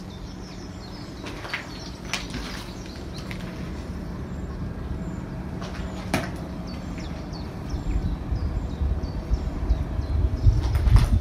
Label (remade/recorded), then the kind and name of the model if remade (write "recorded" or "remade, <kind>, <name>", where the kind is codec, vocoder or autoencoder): recorded